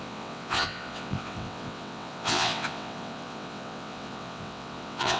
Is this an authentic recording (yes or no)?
no